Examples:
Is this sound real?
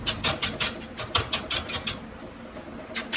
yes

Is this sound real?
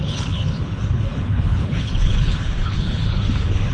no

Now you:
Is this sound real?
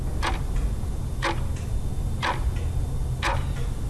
yes